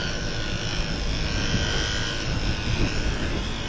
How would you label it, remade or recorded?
recorded